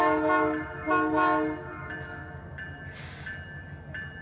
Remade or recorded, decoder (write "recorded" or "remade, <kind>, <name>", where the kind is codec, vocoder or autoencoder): recorded